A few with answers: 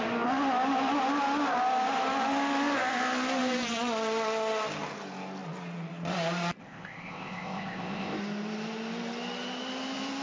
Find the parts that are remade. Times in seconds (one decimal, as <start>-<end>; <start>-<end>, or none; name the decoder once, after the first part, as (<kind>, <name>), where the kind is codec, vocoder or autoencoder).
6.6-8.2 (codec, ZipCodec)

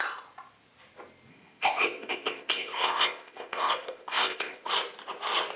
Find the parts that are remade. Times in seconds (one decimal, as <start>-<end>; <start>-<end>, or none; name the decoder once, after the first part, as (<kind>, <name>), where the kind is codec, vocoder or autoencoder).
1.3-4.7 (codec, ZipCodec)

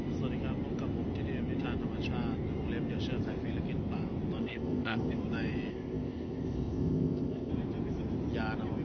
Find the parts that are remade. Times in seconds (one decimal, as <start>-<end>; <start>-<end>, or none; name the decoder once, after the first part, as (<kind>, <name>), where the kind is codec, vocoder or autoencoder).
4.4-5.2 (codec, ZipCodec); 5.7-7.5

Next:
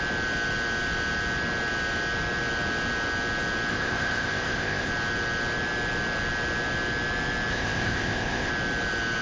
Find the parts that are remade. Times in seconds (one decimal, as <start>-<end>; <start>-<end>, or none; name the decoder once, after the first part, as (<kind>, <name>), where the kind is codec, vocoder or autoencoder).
3.7-4.9 (codec, ZipCodec); 7.5-8.5

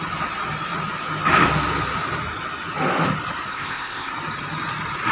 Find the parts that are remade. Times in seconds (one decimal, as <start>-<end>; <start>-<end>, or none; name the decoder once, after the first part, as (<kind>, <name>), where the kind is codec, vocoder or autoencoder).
3.5-4.1 (codec, ZipCodec)

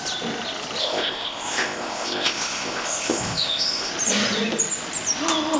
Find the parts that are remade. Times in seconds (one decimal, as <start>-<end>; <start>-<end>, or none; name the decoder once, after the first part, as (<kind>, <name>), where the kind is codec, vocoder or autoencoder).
0.8-3.9 (codec, ZipCodec)